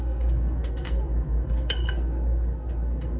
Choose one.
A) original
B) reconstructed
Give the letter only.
B